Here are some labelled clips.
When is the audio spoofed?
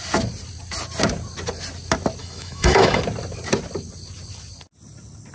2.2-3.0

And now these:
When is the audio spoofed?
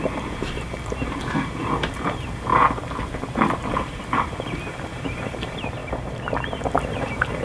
0.0-2.5; 3.7-7.4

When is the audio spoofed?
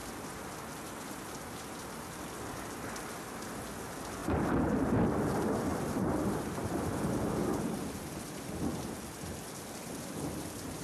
4.2-4.9; 5.7-9.2